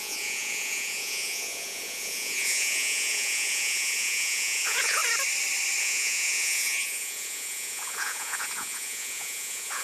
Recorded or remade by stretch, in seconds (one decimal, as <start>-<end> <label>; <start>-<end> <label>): 0.0-5.0 remade; 5.0-5.8 recorded; 5.8-9.8 remade